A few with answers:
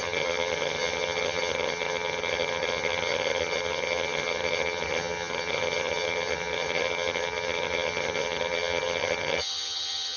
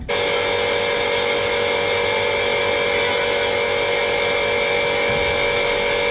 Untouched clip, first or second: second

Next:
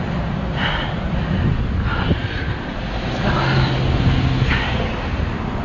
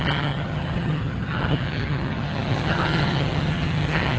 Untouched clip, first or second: first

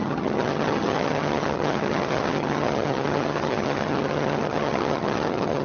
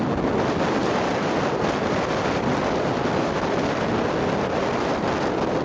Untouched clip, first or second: second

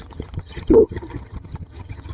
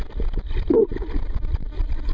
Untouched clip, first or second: second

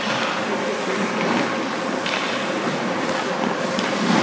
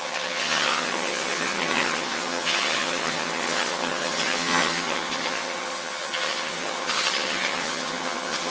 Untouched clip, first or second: first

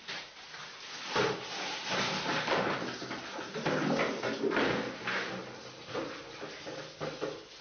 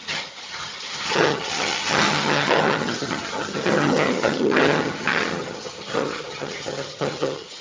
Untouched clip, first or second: first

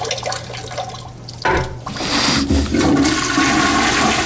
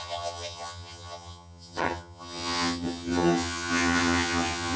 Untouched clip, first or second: first